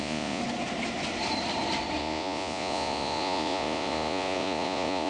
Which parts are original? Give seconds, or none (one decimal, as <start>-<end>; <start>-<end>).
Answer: 0.4-2.0